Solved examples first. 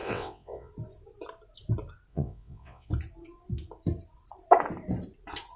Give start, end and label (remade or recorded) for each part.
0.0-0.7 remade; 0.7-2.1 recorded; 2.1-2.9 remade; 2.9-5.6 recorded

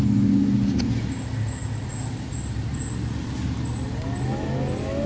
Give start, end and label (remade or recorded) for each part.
0.0-5.1 recorded